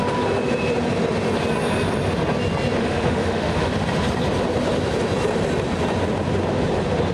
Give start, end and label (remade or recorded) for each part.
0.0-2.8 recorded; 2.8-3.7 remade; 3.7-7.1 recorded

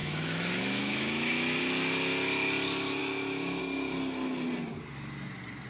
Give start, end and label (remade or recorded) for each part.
0.0-1.6 remade; 1.6-3.0 recorded; 3.0-3.6 remade; 3.6-5.7 recorded

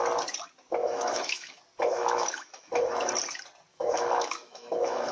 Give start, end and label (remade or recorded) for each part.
0.0-0.8 recorded; 0.8-1.6 remade; 1.6-2.0 recorded; 2.0-3.1 remade; 3.1-3.7 recorded; 3.7-5.1 remade

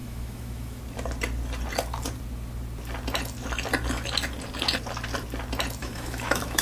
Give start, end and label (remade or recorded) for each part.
0.0-0.8 remade; 0.8-5.8 recorded; 5.8-6.6 remade

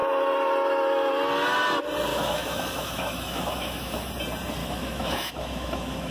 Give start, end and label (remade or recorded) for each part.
0.0-2.1 recorded; 2.1-4.1 remade; 4.1-4.6 recorded; 4.6-6.1 remade

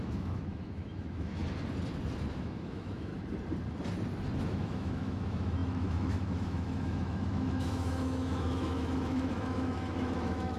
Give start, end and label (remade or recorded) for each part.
0.0-1.4 remade; 1.4-2.3 recorded; 2.3-3.1 remade; 3.1-4.4 recorded; 4.4-10.6 remade

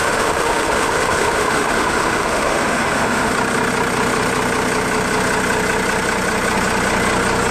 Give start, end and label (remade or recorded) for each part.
0.0-3.3 remade; 3.3-7.5 recorded

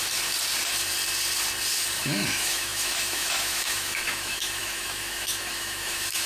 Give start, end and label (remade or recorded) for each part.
0.0-2.0 recorded; 2.0-6.3 remade